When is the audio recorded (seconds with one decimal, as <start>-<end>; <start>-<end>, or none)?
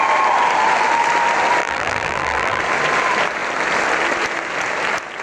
0.0-1.6; 2.6-5.2